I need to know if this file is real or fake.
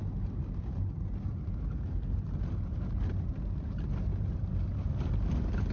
real